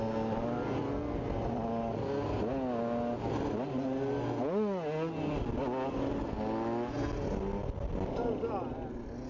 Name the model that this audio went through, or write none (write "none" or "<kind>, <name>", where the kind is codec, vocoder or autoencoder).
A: none